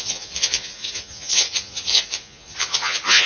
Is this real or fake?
fake